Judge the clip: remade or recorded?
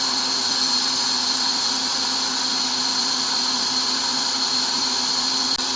recorded